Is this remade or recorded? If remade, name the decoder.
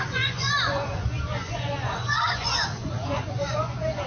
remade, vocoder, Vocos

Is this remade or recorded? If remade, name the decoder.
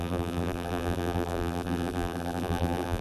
remade, vocoder, BigVGAN v2